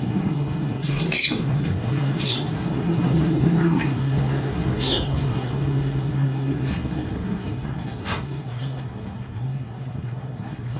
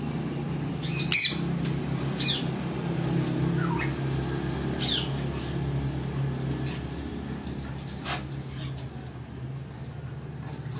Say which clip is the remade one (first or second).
first